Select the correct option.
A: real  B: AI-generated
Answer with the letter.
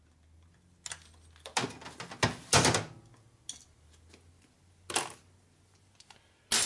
A